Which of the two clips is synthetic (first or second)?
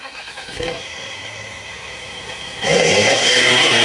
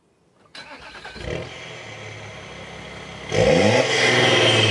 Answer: first